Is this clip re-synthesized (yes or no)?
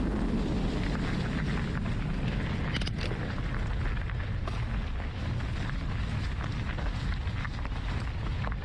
no